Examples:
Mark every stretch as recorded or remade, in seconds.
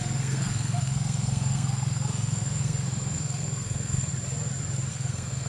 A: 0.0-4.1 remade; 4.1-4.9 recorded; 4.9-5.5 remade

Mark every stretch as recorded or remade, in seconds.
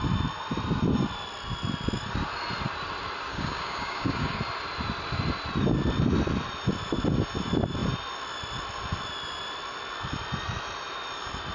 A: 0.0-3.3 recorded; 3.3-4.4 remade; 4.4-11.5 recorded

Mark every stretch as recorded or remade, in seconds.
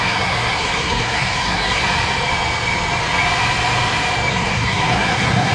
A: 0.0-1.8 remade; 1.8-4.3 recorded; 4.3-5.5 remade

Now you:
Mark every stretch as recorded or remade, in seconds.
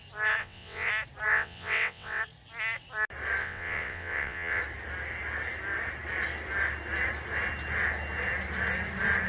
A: 0.0-0.4 recorded; 0.4-0.9 remade; 0.9-1.3 recorded; 1.3-2.2 remade; 2.2-3.4 recorded; 3.4-4.6 remade; 4.6-9.3 recorded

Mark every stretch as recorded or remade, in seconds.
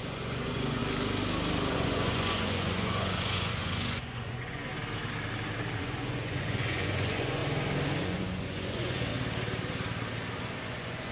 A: 0.0-0.8 remade; 0.8-1.7 recorded; 1.7-4.7 remade; 4.7-5.8 recorded; 5.8-7.4 remade; 7.4-8.0 recorded; 8.0-9.1 remade; 9.1-10.6 recorded; 10.6-11.1 remade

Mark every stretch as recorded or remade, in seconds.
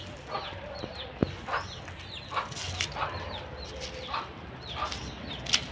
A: 0.0-5.7 recorded